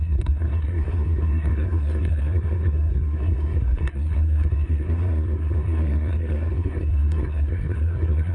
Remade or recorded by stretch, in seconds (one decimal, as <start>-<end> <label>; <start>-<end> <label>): 0.0-8.3 remade